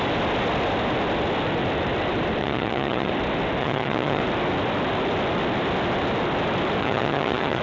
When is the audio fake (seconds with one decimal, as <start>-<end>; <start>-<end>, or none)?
2.4-3.1; 3.6-4.2; 6.8-7.6